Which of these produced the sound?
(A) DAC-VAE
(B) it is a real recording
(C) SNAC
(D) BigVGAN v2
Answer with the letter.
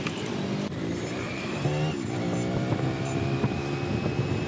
B